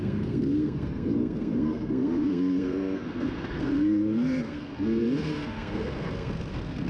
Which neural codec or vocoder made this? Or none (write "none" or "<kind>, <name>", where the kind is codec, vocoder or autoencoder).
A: codec, SNAC